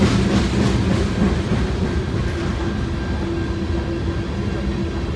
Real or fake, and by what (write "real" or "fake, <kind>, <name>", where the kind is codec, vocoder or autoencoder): real